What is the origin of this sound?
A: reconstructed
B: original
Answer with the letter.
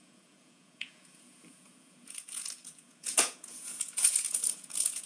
A